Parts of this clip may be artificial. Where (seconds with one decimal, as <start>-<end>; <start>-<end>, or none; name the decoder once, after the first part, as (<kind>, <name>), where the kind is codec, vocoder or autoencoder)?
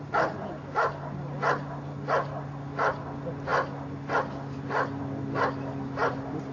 none